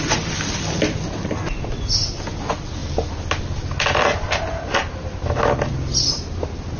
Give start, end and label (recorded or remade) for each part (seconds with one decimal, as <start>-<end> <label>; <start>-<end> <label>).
0.0-6.8 recorded